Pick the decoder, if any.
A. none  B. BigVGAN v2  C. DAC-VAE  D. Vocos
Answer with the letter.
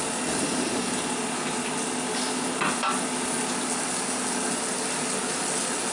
A